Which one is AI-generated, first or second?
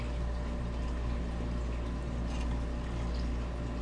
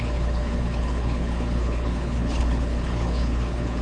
second